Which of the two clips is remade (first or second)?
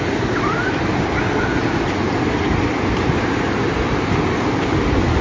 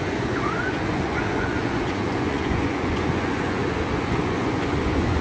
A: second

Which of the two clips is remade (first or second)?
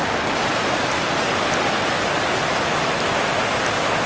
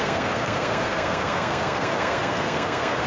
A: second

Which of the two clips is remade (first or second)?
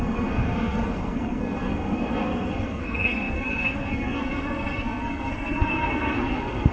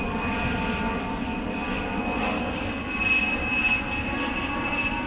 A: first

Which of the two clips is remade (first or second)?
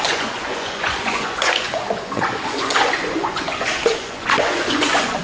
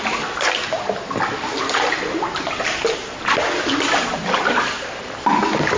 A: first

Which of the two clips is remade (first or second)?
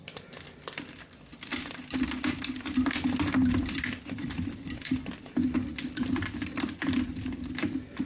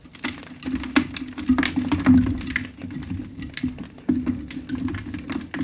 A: first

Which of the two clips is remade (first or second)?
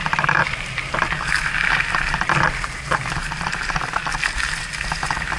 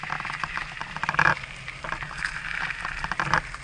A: first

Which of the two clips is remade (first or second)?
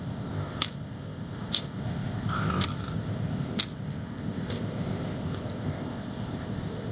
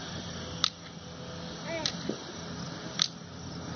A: first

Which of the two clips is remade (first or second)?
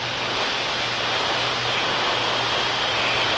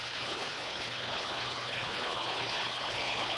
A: second